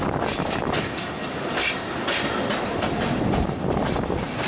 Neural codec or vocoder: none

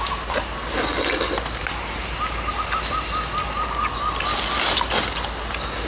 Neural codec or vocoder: none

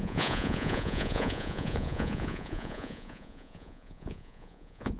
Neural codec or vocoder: vocoder, Vocos